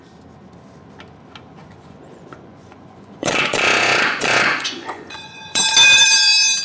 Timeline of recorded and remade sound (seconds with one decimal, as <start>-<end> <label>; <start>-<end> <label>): 0.0-1.6 recorded; 1.6-5.6 remade; 5.6-6.6 recorded